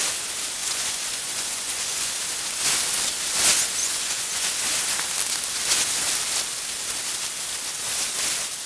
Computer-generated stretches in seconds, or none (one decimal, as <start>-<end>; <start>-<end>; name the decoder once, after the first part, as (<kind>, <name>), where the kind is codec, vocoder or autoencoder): 0.6-2.1 (vocoder, Vocos); 3.8-4.5